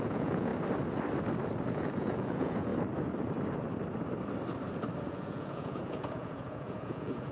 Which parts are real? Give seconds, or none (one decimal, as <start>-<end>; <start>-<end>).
0.5-1.7; 2.7-5.0